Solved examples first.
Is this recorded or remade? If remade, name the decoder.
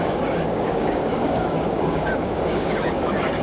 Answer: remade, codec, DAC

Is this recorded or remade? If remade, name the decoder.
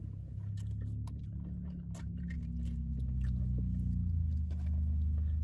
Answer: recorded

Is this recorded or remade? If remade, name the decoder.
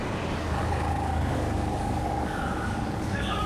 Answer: remade, codec, DAC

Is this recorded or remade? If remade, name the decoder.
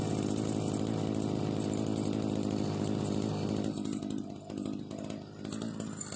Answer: recorded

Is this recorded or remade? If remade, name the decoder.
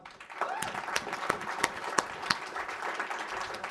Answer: recorded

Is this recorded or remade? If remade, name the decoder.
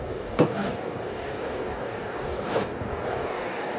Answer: remade, codec, DAC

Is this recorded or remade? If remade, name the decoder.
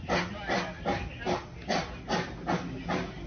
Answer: recorded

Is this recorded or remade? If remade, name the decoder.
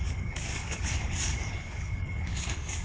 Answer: remade, codec, DAC